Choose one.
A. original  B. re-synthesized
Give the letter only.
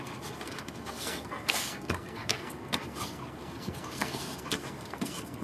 B